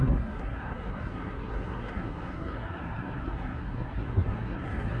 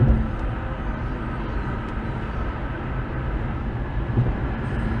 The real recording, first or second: second